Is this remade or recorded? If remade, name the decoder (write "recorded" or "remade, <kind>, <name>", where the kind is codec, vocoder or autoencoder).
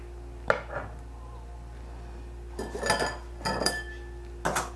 recorded